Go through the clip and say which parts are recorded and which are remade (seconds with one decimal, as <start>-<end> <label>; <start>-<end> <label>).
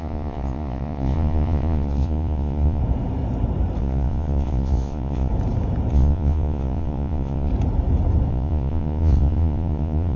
0.0-2.8 remade; 2.8-3.8 recorded; 3.8-5.3 remade; 5.3-5.9 recorded; 5.9-7.5 remade; 7.5-8.3 recorded; 8.3-10.2 remade